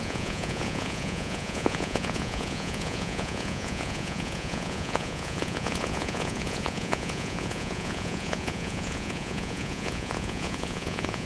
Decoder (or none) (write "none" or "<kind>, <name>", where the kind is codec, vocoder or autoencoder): vocoder, Vocos